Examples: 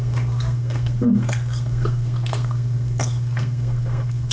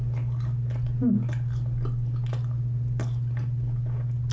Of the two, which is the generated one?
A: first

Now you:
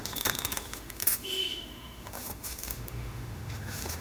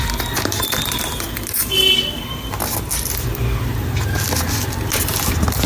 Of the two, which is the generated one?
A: first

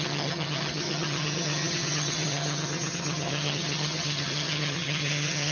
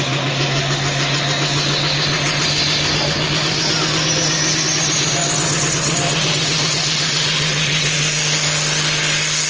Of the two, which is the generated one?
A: first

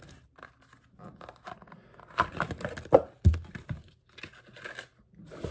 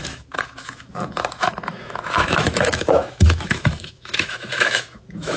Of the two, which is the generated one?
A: second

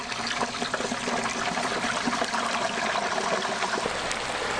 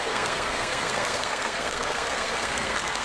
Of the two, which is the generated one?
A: second